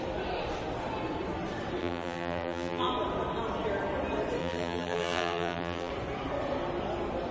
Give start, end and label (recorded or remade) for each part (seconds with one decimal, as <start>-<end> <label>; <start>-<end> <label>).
0.0-1.8 recorded; 1.8-2.9 remade; 2.9-4.4 recorded; 4.4-5.9 remade; 5.9-7.3 recorded